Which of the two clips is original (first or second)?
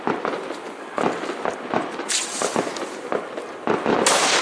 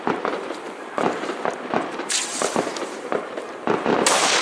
first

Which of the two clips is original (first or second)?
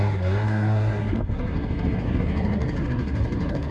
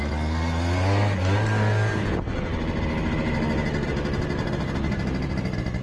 second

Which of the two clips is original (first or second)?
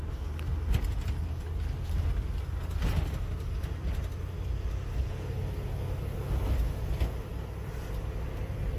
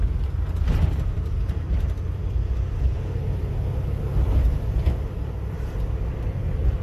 first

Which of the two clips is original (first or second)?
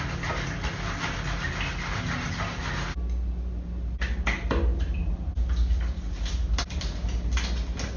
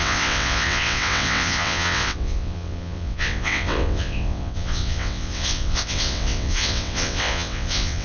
first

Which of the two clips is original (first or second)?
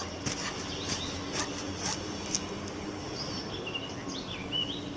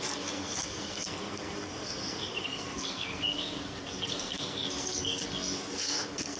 first